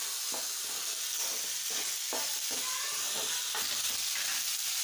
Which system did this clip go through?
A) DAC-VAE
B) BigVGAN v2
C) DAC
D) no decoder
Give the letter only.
D